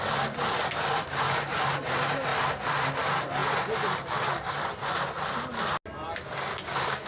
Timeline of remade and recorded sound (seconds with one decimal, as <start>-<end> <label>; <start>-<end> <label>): 0.0-7.1 recorded